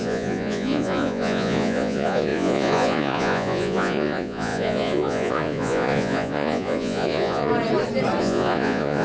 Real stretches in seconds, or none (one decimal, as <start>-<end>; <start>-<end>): 7.5-8.2

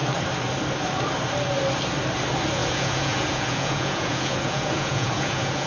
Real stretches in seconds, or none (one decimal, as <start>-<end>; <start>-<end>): 0.0-2.6

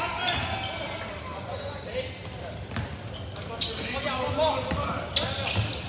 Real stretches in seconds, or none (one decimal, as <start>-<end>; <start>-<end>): 0.0-1.3; 1.8-5.9

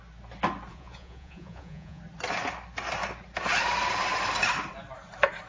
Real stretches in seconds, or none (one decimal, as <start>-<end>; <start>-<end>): 0.0-0.7; 2.0-5.5